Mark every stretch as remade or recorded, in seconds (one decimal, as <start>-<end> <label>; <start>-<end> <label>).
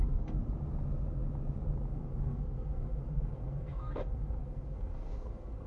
0.0-0.4 remade; 0.4-1.9 recorded; 1.9-5.7 remade